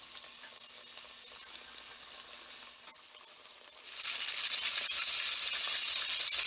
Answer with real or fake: real